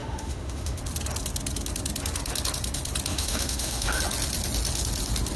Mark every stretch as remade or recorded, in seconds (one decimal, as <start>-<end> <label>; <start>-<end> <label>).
0.0-0.8 remade; 0.8-3.1 recorded; 3.1-4.0 remade; 4.0-5.4 recorded